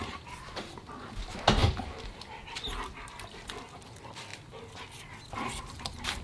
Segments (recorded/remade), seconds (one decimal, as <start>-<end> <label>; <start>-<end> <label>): 0.0-6.2 recorded